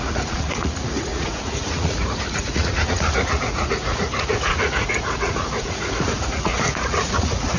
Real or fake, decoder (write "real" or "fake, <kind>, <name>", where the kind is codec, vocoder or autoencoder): fake, vocoder, Vocos